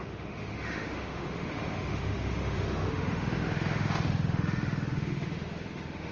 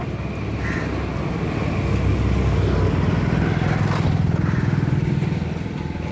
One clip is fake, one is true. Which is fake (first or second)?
first